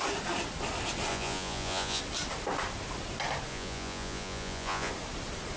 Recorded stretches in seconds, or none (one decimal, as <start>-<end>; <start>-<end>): 0.0-1.1; 2.0-3.5; 4.9-5.6